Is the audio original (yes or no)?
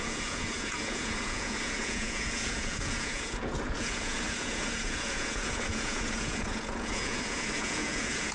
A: no